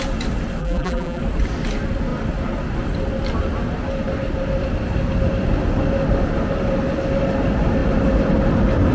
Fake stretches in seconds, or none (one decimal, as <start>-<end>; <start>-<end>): 0.6-1.2